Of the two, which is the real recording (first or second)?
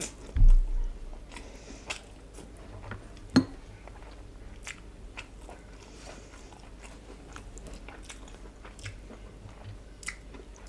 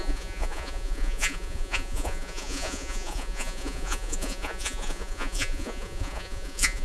first